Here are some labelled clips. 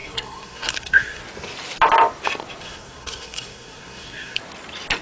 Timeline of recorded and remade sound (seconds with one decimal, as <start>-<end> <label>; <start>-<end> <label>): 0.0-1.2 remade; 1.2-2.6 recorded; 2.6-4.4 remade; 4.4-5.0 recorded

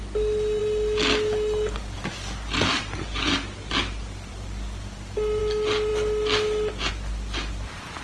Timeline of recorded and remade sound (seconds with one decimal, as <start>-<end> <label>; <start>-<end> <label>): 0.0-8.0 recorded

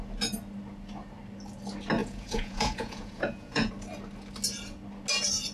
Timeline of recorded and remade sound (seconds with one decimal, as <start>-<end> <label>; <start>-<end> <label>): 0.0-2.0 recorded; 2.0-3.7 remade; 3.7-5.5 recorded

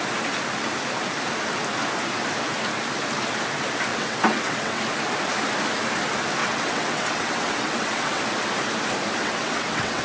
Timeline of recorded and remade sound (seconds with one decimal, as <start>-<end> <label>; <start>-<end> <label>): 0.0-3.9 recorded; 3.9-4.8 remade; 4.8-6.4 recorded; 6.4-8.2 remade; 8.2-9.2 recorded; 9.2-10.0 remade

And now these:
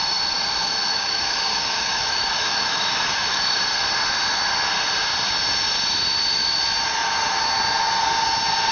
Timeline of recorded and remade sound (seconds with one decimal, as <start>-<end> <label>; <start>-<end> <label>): 0.0-0.9 recorded; 0.9-3.6 remade; 3.6-8.7 recorded

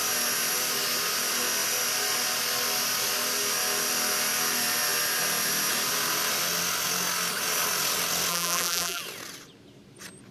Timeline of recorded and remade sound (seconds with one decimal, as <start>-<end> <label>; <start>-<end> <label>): 0.0-8.3 recorded; 8.3-9.0 remade; 9.0-10.3 recorded

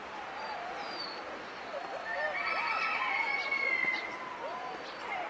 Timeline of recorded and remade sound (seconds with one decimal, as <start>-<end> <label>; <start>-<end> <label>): 0.0-1.7 remade; 1.7-2.6 recorded; 2.6-3.8 remade; 3.8-4.6 recorded; 4.6-5.3 remade